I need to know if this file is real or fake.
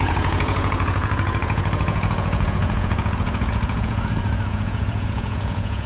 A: fake